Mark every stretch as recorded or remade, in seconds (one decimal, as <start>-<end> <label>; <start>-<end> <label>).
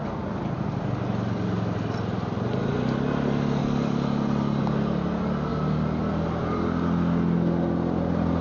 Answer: 0.0-8.4 recorded